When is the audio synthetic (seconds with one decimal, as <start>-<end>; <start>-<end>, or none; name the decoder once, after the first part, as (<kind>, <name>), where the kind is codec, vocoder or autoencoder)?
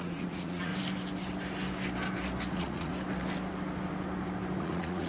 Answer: 0.0-0.7 (vocoder, Vocos); 2.5-2.9; 4.6-5.1